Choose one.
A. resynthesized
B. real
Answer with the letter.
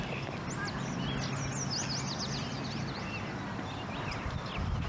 B